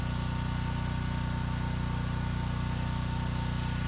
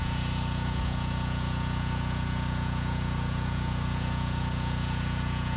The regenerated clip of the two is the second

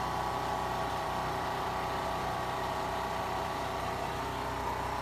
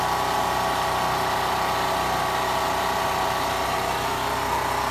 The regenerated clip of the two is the first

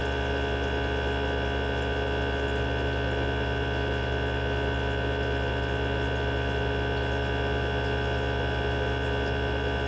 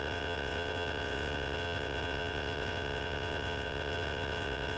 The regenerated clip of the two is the second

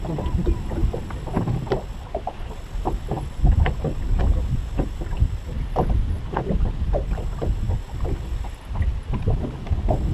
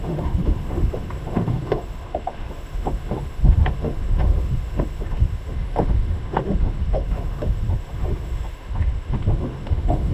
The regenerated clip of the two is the second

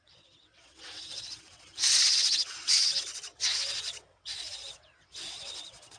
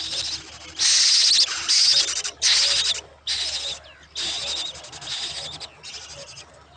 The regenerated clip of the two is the first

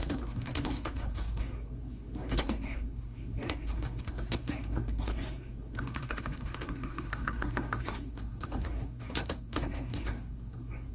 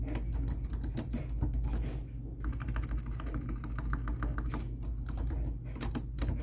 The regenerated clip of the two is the first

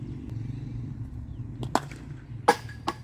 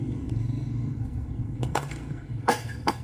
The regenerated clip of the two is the second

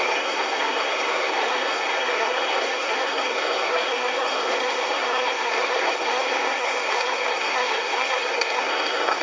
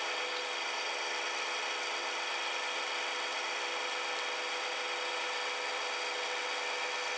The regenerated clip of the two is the first